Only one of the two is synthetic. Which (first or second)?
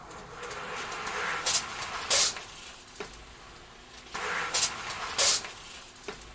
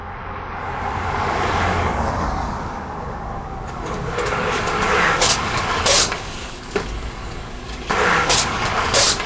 second